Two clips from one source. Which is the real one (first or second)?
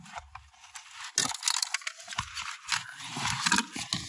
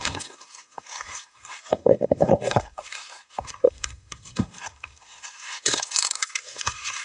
first